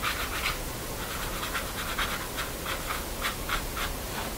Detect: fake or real real